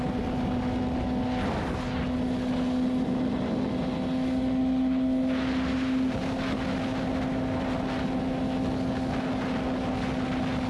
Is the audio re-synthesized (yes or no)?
no